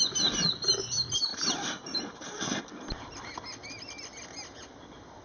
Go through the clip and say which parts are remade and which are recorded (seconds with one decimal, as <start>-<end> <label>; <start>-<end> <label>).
0.0-1.3 recorded; 1.3-2.6 remade; 2.6-5.2 recorded